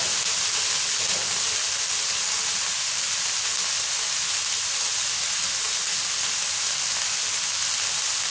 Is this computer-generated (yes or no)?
no